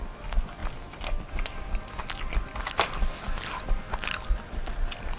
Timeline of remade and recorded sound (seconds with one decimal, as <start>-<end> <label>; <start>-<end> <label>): 0.0-5.2 recorded